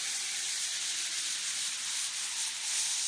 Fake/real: real